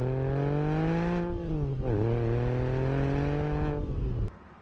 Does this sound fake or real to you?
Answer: real